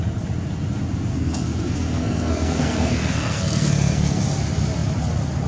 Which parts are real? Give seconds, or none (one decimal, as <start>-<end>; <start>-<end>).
0.0-1.1; 4.2-5.5